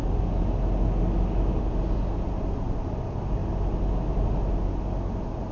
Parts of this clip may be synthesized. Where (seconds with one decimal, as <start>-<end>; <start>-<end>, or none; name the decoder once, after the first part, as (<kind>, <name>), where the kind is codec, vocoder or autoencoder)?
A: none